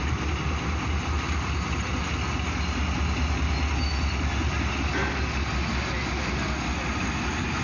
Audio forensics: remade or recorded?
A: recorded